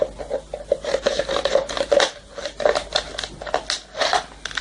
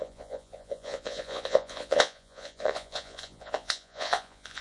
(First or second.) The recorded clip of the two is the first